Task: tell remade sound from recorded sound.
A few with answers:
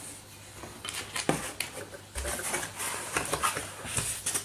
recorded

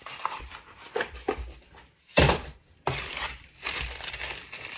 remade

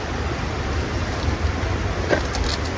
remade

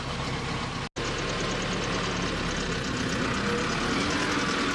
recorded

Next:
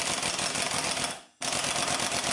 recorded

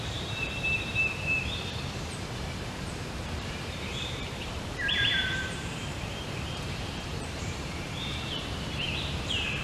remade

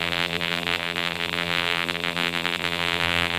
remade